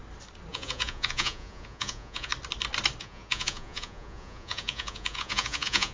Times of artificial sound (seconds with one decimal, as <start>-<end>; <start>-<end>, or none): 0.5-2.3; 3.0-5.9